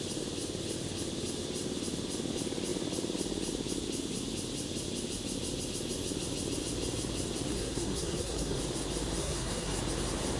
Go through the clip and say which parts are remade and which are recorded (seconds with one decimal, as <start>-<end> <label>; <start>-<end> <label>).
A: 0.0-7.5 recorded; 7.5-8.6 remade; 8.6-9.2 recorded; 9.2-9.8 remade; 9.8-10.4 recorded